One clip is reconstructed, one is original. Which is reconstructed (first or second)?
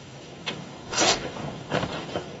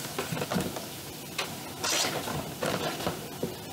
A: first